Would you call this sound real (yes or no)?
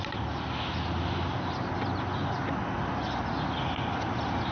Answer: yes